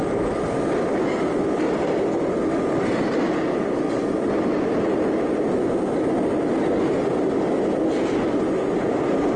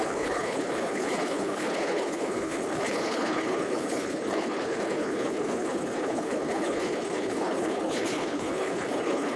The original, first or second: first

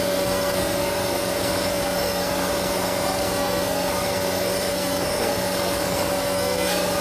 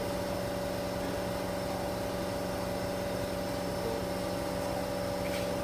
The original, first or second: second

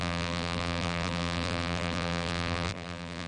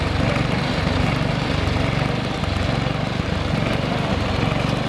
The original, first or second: second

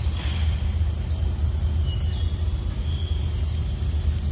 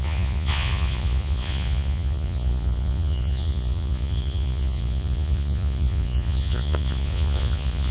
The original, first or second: first